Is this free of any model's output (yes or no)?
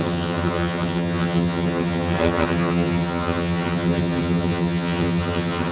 no